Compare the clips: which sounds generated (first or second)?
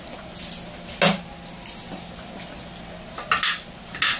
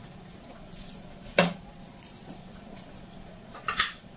second